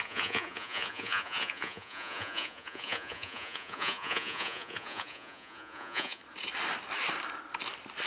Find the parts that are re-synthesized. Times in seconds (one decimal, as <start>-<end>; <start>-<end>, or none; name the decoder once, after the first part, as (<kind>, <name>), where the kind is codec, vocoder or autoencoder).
0.0-6.2 (vocoder, Vocos)